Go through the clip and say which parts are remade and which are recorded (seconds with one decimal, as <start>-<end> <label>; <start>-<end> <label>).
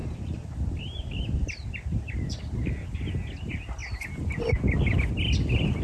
0.0-2.4 remade; 2.4-5.8 recorded